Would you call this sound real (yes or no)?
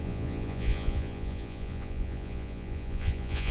no